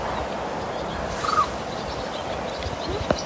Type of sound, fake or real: real